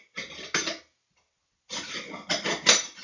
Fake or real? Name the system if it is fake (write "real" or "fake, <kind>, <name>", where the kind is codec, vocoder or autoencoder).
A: real